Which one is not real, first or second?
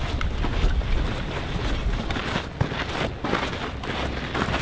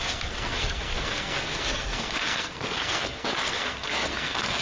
second